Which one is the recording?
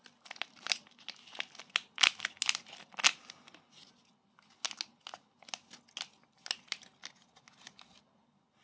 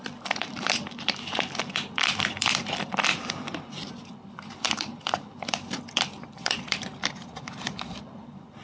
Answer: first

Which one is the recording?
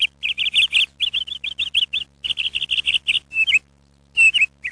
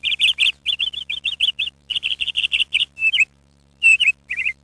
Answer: first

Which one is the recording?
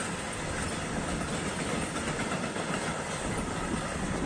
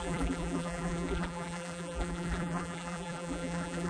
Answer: first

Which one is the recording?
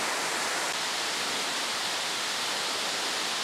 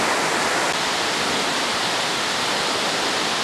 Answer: second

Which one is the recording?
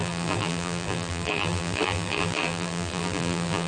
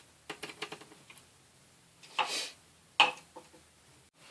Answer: second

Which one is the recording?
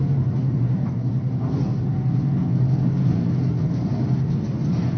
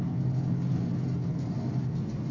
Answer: second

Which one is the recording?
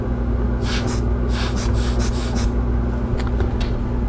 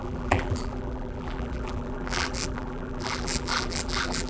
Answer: first